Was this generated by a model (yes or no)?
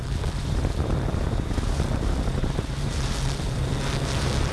yes